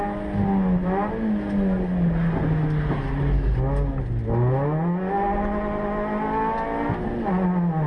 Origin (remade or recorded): recorded